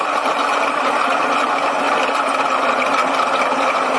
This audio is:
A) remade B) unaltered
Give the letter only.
B